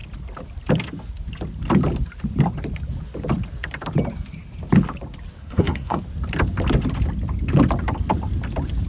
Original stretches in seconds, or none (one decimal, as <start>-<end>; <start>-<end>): 0.0-5.4; 6.0-8.9